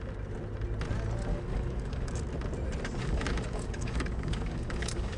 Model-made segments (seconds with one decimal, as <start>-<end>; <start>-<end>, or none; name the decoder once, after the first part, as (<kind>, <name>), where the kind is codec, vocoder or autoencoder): 1.3-2.2 (codec, DAC); 3.0-5.2